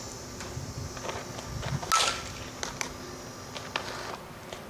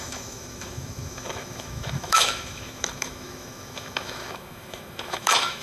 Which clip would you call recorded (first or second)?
first